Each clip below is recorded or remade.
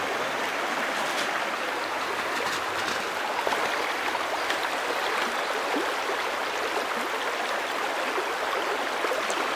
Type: recorded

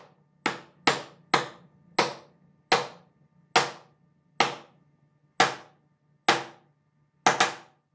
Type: recorded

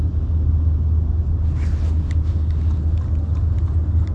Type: recorded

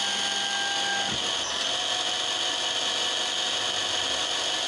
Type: recorded